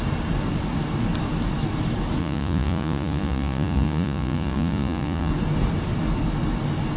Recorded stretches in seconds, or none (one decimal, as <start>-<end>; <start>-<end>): 0.0-2.2; 5.3-7.0